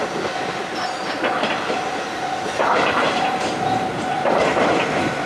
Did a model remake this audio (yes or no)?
no